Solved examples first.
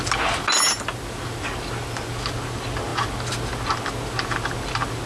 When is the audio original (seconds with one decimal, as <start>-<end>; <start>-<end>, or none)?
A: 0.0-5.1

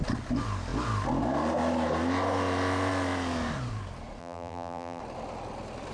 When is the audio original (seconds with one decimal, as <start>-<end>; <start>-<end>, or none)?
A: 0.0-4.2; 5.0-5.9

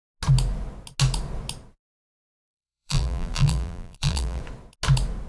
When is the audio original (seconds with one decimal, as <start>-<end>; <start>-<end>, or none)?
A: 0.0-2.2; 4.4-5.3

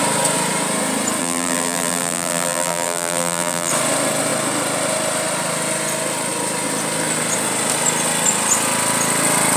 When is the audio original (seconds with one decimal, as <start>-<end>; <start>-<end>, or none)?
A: 0.0-1.2; 3.7-9.6

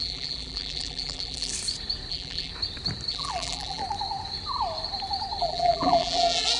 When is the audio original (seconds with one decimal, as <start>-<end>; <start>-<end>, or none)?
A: 1.5-2.1; 2.5-3.1; 3.8-5.4

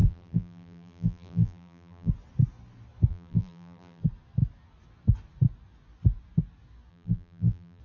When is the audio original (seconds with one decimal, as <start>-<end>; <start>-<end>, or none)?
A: 2.1-3.1; 4.0-6.9

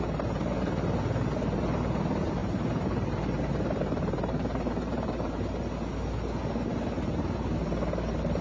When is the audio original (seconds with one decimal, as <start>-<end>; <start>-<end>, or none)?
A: 0.0-2.4; 5.3-8.4

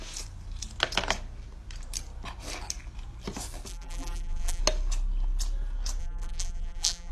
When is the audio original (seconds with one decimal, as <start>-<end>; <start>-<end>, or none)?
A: 0.0-3.7; 4.6-6.0